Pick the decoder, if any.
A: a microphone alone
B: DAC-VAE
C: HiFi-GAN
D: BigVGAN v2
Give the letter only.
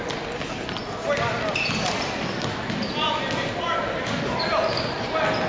A